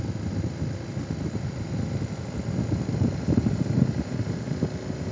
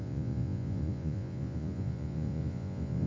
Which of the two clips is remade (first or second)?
second